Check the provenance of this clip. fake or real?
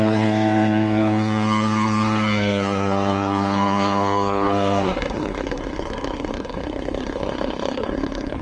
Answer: fake